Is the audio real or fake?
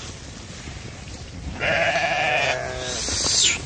real